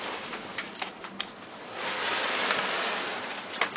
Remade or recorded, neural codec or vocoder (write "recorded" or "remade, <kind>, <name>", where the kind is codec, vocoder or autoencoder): recorded